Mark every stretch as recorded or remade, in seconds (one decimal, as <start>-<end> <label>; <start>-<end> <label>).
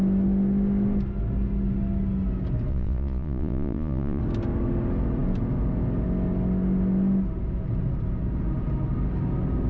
0.0-2.7 recorded; 2.7-4.2 remade; 4.2-9.7 recorded